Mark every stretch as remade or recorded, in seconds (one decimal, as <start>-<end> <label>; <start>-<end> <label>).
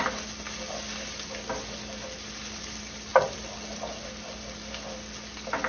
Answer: 0.0-5.7 recorded